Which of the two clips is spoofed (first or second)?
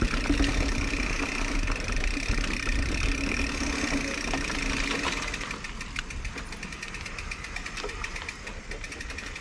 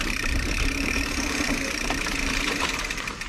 second